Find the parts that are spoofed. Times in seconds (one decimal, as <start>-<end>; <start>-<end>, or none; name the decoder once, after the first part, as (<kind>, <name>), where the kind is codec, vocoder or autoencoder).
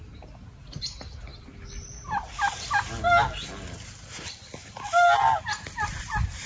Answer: none